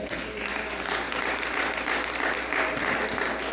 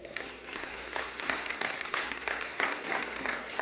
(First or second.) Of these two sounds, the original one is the first